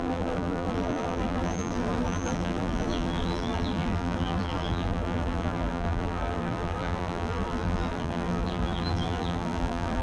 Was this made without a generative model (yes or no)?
no